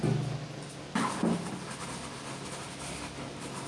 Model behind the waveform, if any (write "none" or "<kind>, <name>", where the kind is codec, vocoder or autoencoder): none